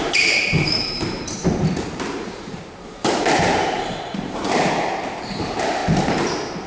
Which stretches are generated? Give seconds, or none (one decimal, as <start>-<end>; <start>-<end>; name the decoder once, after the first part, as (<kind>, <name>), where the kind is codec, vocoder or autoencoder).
0.0-5.8 (vocoder, BigVGAN v2)